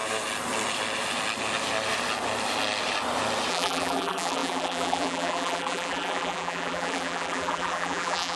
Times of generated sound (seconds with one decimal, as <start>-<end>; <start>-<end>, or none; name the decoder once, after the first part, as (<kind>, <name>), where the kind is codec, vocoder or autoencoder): 3.5-8.4 (vocoder, BigVGAN v2)